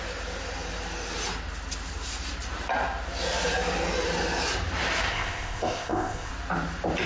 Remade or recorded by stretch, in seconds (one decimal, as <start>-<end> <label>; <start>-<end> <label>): 0.0-5.1 recorded; 5.1-6.3 remade; 6.3-7.1 recorded